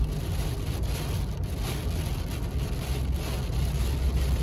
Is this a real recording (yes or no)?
yes